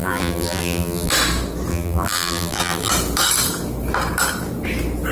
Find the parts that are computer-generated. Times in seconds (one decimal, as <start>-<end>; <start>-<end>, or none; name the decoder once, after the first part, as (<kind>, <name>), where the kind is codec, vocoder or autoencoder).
0.0-1.1 (vocoder, BigVGAN v2); 1.7-2.9